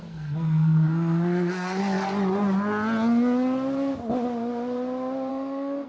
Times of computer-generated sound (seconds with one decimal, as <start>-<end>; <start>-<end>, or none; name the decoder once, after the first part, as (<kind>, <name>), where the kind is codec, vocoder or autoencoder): 0.0-1.8 (codec, SNAC); 5.3-5.9